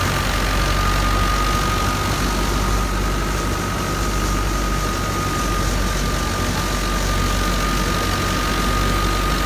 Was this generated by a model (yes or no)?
no